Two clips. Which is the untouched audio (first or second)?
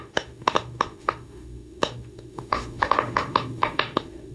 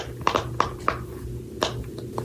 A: second